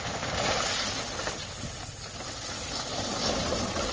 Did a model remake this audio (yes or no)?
no